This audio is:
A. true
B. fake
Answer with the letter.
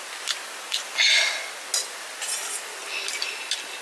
A